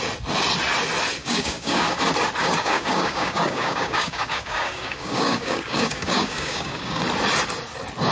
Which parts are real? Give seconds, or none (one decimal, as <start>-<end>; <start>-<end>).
0.0-1.2; 2.0-2.4; 7.0-8.1